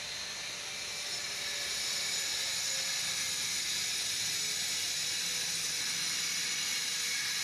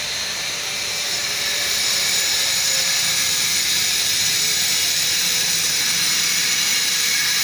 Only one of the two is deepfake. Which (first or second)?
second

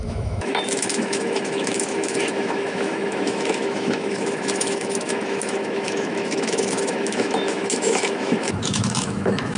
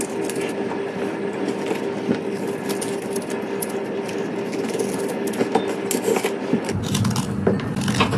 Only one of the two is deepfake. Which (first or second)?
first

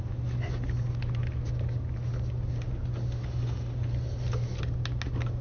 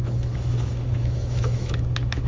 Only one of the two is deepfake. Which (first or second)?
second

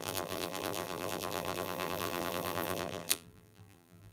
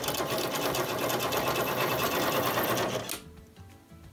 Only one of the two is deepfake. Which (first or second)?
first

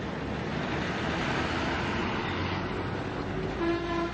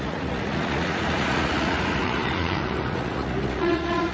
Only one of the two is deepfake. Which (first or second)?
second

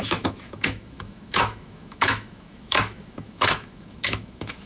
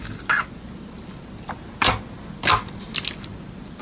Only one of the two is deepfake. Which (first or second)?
first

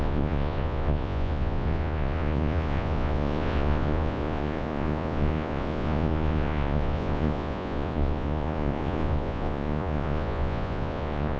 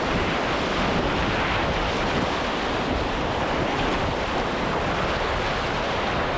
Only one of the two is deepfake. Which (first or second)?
first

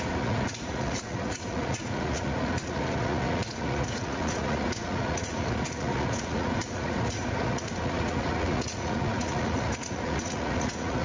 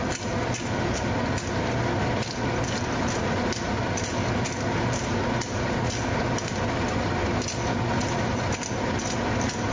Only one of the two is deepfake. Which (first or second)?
first